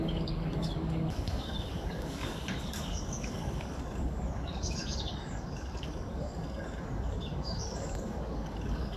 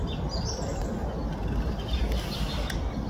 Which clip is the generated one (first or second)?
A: first